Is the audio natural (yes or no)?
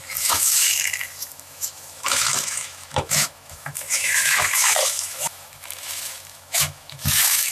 no